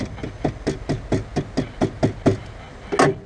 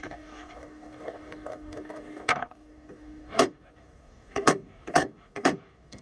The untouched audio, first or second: first